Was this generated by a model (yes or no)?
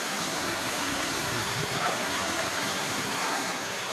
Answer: yes